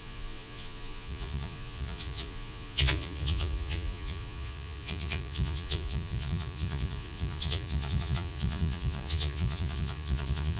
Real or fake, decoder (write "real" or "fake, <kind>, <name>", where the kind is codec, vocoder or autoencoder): fake, vocoder, Vocos